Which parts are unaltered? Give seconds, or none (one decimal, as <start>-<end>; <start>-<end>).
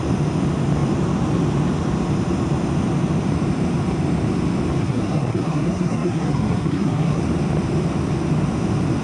0.0-4.8; 7.2-9.0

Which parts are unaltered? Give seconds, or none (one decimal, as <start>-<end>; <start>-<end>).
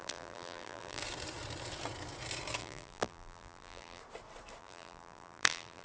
1.0-2.6; 4.0-4.6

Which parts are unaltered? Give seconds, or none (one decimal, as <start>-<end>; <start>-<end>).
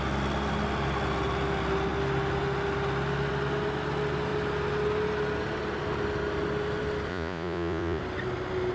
0.0-7.1; 8.0-8.7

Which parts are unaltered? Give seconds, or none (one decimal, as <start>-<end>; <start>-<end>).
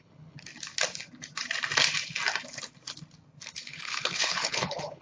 0.5-3.5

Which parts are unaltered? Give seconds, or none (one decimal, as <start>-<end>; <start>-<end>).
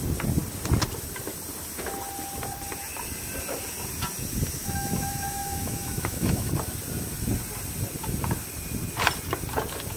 0.0-4.6; 6.5-10.0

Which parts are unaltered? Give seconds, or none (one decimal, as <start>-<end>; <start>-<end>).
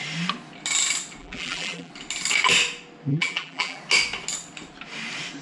0.0-1.2; 1.9-3.1; 3.8-5.4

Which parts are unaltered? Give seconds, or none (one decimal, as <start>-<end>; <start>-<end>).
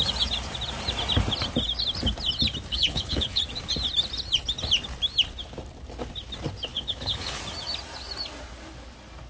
0.0-2.7; 3.4-6.7; 7.4-9.3